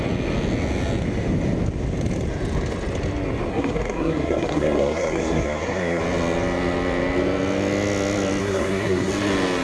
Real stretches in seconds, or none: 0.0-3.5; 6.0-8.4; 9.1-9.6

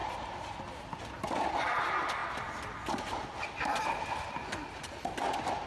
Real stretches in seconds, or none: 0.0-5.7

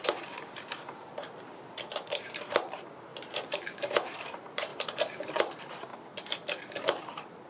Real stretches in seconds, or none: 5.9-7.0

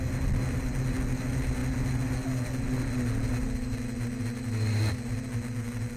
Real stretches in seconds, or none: 0.0-6.0